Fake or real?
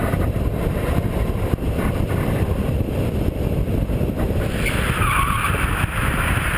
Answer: fake